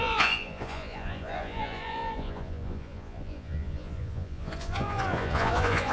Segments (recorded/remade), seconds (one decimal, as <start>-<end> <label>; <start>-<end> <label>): 0.0-5.9 remade